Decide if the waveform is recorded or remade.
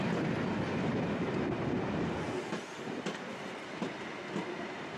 recorded